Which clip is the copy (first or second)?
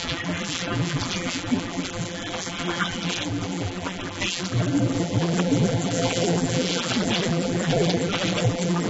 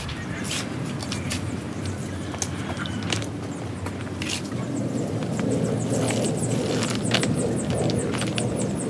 first